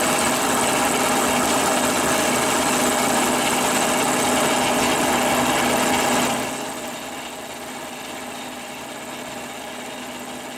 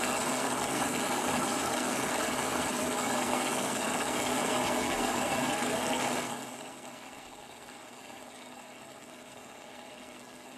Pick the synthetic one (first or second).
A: second